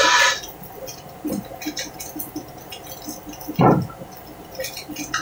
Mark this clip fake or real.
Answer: real